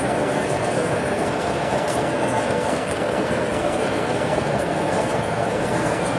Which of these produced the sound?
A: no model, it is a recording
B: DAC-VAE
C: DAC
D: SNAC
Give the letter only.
D